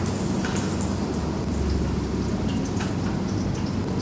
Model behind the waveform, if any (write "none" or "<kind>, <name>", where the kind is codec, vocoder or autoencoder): none